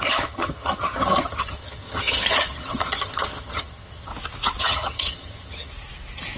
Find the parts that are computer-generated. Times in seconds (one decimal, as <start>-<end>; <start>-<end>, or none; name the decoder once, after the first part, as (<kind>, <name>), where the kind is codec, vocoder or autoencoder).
0.0-4.1 (vocoder, HiFi-GAN); 4.6-5.7